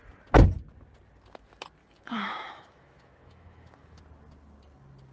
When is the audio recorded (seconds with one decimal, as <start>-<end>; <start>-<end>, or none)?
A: 0.0-1.8; 4.0-5.1